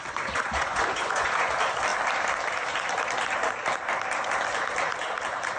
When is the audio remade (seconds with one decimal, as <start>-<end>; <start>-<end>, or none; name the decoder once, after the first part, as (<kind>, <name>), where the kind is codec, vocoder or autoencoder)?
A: 0.0-1.5 (vocoder, Vocos)